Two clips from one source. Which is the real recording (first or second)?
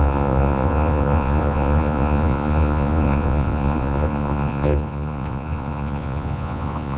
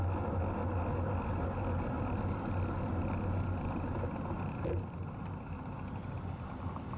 second